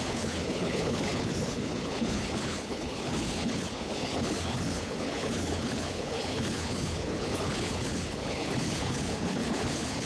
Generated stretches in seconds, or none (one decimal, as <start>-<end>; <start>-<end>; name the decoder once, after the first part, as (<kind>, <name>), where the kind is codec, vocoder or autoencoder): 0.0-10.1 (codec, HILCodec)